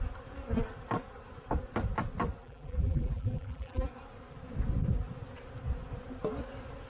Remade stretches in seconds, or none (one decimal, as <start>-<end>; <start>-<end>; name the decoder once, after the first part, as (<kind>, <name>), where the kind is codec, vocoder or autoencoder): 2.4-3.9 (vocoder, BigVGAN v2)